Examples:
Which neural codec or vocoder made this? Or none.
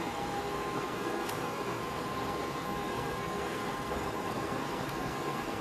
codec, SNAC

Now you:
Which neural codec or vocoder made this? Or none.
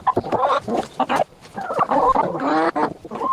none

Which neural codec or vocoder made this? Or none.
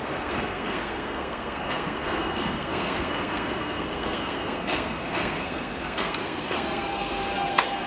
codec, SNAC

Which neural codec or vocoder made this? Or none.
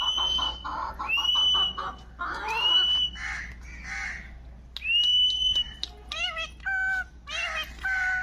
none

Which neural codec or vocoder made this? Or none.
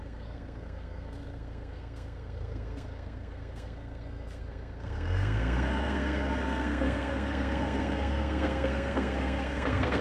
codec, SNAC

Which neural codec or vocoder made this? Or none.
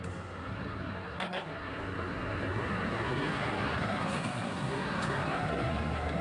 codec, SNAC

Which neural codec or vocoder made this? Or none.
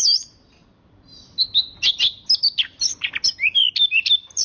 none